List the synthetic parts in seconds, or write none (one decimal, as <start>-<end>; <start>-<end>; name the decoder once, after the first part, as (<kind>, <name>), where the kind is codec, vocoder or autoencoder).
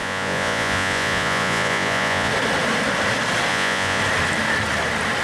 0.0-2.3 (vocoder, Vocos); 3.5-4.0